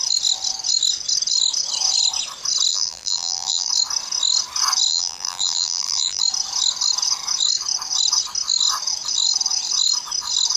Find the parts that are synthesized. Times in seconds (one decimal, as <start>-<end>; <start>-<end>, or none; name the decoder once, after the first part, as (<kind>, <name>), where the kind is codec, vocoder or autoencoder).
2.7-3.7 (vocoder, BigVGAN v2); 4.9-6.2